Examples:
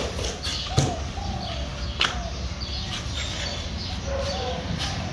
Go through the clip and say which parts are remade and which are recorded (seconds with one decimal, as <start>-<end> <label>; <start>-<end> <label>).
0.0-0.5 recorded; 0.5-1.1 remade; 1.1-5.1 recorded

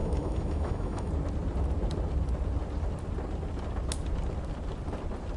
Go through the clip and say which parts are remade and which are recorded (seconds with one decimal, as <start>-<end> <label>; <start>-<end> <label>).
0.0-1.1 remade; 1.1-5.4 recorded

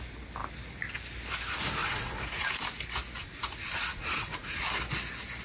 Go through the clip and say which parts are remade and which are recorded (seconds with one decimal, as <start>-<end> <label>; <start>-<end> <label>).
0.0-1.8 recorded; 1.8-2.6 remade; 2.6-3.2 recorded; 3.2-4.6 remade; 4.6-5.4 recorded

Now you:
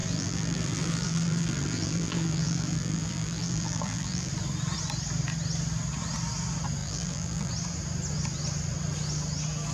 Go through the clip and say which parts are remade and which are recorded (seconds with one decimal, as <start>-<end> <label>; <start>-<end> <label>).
0.0-4.3 remade; 4.3-6.8 recorded; 6.8-7.5 remade; 7.5-9.7 recorded

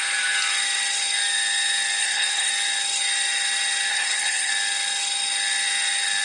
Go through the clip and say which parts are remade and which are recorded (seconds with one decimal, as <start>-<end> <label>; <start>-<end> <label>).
0.0-2.0 recorded; 2.0-2.5 remade; 2.5-3.9 recorded; 3.9-4.5 remade; 4.5-6.2 recorded